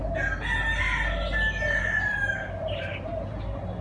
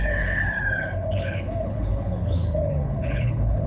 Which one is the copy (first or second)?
second